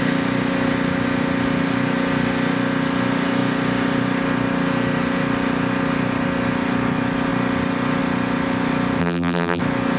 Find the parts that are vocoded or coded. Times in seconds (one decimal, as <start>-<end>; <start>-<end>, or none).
9.0-9.6